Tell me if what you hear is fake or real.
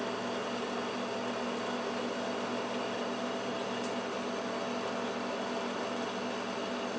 real